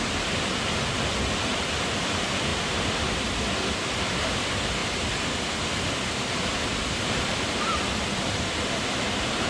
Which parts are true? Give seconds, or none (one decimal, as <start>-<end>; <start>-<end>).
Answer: 0.0-2.5; 3.0-6.8; 7.7-9.5